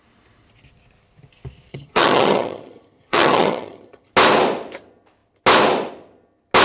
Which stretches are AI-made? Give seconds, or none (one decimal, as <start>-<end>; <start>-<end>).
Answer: 1.7-4.1